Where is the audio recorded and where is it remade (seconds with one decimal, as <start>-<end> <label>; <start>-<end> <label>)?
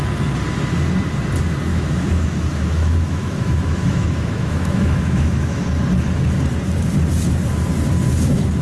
0.0-1.7 recorded; 1.7-5.6 remade; 5.6-8.6 recorded